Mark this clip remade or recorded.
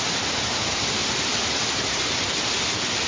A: recorded